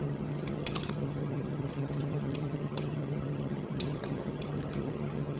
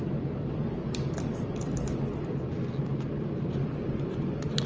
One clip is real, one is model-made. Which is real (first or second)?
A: second